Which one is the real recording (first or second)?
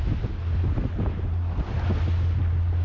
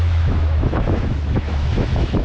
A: first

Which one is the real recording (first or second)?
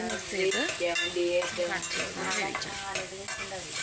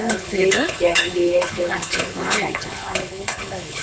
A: first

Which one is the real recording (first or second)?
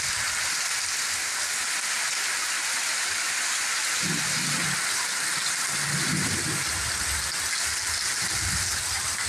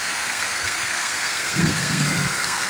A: first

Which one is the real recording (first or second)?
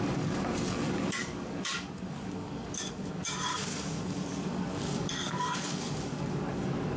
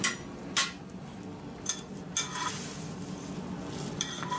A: second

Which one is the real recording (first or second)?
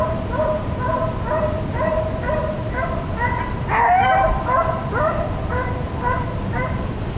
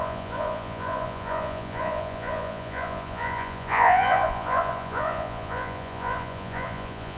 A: first